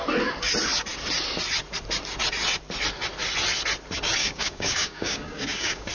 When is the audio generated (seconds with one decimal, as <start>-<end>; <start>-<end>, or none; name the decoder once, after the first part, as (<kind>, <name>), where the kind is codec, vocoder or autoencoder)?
4.2-5.9 (codec, DAC)